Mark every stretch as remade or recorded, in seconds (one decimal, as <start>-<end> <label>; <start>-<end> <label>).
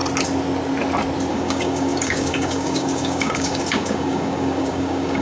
0.0-1.3 recorded; 1.3-5.2 remade